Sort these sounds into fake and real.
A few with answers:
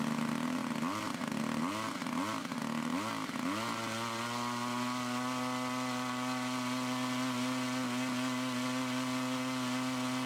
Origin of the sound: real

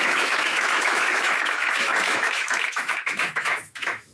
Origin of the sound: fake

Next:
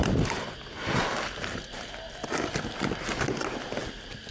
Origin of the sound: real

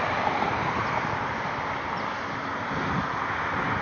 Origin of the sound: real